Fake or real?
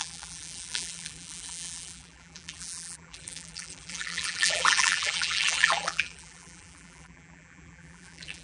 fake